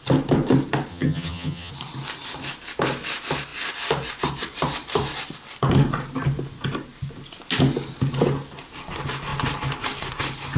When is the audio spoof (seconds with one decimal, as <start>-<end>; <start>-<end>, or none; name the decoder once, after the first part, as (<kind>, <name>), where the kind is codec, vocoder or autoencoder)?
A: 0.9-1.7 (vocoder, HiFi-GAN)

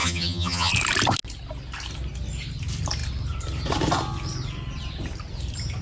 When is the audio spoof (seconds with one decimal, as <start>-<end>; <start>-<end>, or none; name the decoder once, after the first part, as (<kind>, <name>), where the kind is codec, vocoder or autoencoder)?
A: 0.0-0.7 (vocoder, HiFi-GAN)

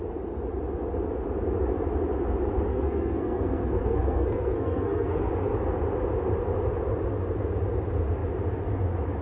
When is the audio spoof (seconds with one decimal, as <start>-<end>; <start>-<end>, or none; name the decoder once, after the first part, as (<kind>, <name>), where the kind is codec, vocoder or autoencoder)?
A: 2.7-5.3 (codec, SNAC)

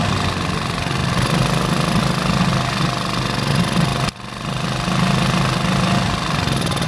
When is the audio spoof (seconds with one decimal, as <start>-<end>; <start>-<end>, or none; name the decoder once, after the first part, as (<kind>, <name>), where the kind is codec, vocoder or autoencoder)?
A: none

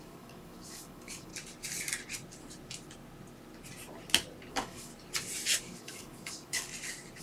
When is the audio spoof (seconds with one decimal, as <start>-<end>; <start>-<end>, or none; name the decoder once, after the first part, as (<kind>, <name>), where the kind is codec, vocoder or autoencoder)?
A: 0.0-1.3 (codec, DAC); 4.5-4.9; 5.6-6.7